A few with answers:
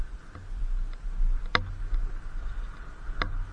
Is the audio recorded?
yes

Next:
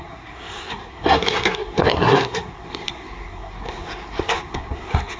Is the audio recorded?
no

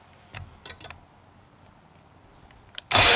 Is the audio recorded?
yes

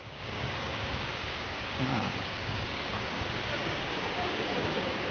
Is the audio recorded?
no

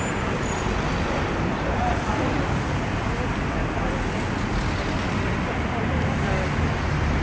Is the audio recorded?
yes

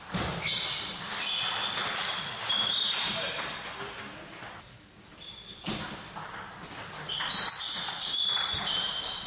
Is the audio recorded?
yes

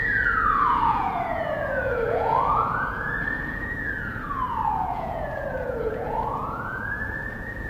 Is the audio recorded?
no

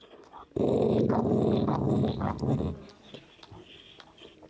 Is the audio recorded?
yes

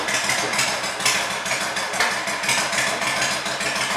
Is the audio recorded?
yes